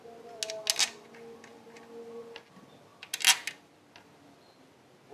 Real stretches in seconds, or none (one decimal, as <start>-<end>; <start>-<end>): 0.0-5.1